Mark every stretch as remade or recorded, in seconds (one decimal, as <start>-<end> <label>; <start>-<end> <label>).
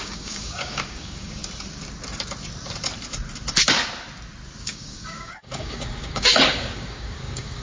0.0-1.4 remade; 1.4-4.6 recorded; 4.6-7.6 remade